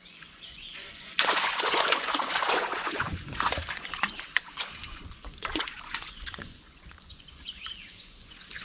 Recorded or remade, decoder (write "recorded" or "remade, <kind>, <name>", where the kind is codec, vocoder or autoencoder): remade, vocoder, Vocos